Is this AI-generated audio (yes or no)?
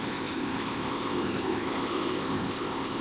yes